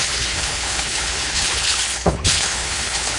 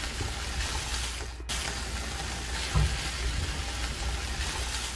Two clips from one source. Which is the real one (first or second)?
second